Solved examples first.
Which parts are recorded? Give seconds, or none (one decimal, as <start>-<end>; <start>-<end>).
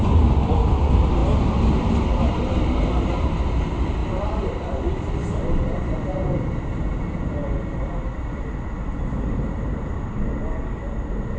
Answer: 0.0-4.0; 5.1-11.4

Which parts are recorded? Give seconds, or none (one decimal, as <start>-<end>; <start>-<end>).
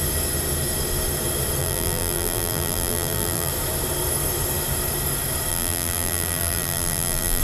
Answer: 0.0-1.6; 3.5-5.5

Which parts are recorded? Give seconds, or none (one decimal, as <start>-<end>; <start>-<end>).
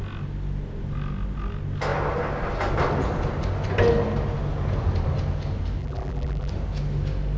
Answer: 0.0-5.8; 6.5-7.4